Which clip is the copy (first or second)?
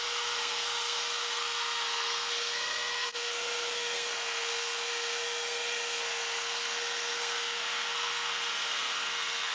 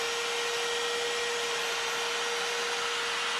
first